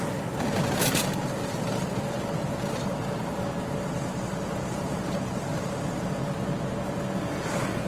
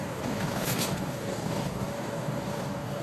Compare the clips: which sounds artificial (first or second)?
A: second